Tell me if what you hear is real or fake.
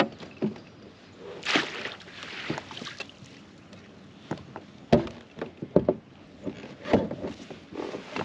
real